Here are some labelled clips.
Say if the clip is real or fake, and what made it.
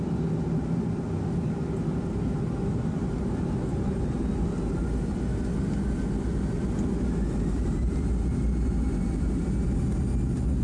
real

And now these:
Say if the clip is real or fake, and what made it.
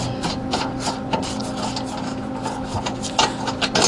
real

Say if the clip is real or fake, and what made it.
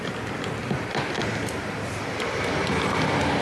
real